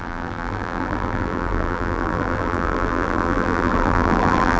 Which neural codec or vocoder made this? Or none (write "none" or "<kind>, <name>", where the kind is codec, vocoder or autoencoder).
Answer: vocoder, BigVGAN v2